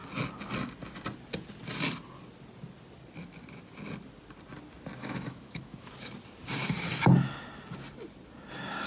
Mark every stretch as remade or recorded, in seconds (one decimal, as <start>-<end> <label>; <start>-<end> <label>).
0.0-5.0 recorded; 5.0-5.9 remade; 5.9-8.9 recorded